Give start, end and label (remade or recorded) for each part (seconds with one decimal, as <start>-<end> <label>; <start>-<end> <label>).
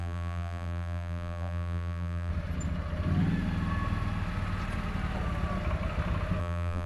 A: 0.0-2.3 remade; 2.3-6.4 recorded; 6.4-6.9 remade